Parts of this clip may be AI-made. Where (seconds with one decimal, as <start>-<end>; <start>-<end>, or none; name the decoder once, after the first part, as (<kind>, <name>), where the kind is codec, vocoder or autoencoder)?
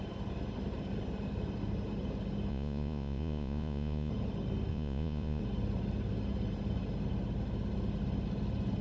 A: 2.5-4.1 (vocoder, Vocos); 4.7-5.4